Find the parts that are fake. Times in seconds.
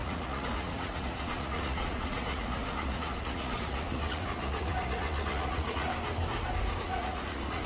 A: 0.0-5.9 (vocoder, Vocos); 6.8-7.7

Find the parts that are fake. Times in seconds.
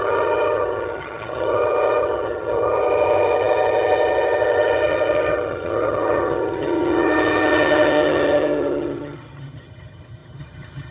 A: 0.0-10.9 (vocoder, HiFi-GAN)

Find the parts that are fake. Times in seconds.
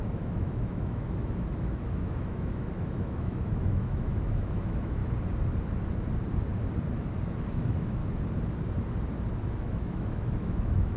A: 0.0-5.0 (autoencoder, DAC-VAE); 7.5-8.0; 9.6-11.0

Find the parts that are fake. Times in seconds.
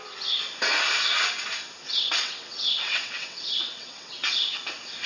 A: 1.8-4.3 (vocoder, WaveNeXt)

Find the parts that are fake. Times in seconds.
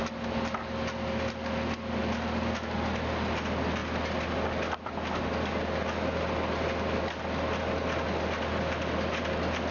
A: none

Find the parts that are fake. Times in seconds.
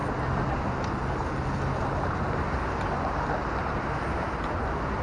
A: none